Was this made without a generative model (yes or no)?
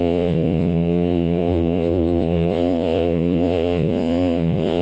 no